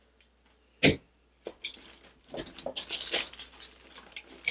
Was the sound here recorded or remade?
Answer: recorded